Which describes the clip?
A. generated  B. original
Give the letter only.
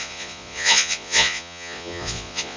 A